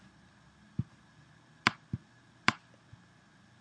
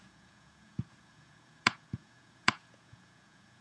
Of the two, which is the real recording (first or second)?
first